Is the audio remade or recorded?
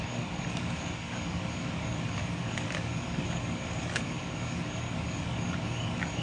remade